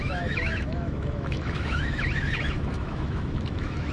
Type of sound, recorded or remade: remade